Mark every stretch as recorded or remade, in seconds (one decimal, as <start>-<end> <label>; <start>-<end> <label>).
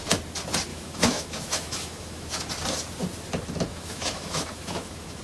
0.0-0.7 recorded; 0.7-2.5 remade; 2.5-3.7 recorded; 3.7-5.2 remade